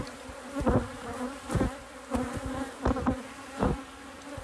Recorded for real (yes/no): yes